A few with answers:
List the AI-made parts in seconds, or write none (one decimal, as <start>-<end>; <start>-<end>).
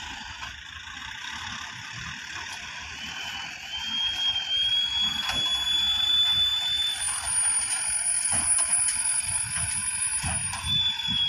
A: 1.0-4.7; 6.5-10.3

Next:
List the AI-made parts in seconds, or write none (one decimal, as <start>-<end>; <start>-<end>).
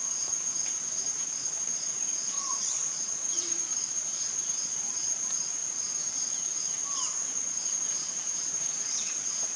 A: 0.0-5.6; 7.3-9.6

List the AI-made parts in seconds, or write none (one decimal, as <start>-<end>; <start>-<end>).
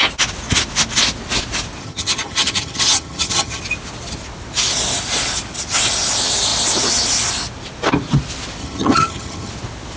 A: 1.8-3.6; 8.6-9.5